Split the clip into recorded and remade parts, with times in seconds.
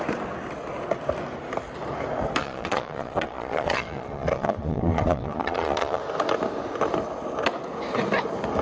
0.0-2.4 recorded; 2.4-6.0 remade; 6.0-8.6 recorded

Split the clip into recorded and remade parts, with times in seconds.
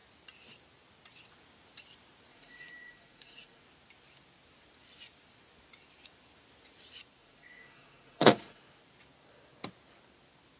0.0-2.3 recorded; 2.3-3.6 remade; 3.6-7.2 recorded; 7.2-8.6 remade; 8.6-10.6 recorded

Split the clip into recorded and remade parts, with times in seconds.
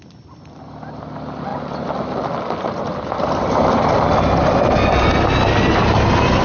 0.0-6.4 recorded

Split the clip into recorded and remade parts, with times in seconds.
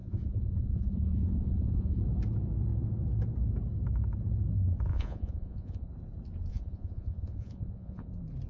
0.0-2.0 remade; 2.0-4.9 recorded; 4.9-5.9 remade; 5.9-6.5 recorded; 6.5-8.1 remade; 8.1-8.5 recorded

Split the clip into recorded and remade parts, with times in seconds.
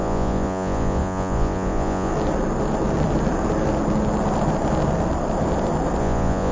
0.0-2.1 remade; 2.1-6.0 recorded; 6.0-6.5 remade